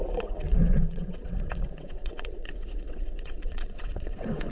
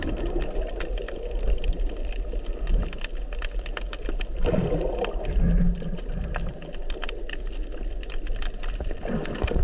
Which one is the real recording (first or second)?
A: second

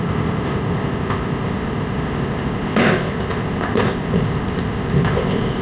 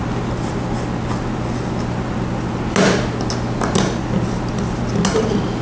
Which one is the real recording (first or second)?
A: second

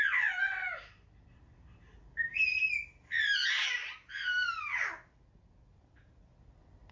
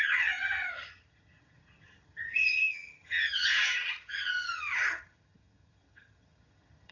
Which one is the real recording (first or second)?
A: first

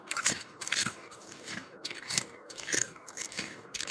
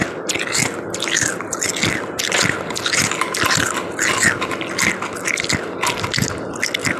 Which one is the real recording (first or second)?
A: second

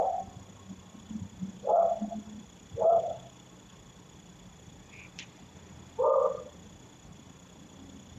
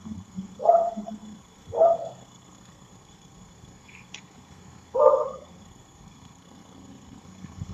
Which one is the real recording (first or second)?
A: first